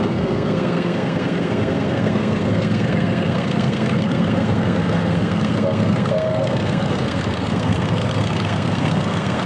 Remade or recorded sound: remade